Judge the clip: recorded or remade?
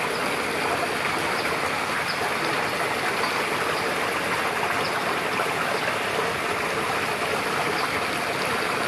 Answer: recorded